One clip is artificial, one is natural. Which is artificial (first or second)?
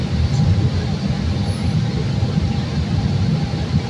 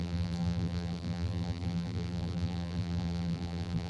second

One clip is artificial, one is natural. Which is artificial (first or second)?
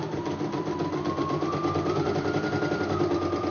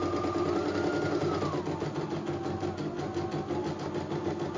first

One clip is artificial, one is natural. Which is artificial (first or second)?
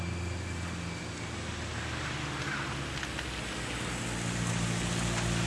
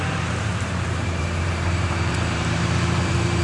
second